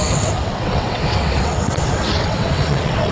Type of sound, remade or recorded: remade